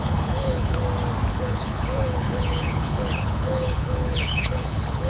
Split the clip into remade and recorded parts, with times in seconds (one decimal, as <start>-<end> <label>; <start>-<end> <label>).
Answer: 0.0-0.8 remade; 0.8-1.3 recorded; 1.3-5.1 remade